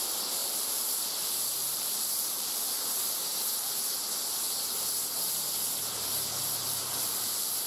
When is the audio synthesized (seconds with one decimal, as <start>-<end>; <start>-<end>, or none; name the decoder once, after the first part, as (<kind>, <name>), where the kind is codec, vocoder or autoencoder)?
0.4-2.8 (vocoder, BigVGAN v2); 6.4-7.7